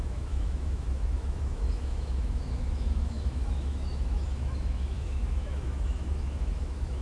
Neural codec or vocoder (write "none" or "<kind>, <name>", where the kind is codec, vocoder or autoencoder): autoencoder, DAC-VAE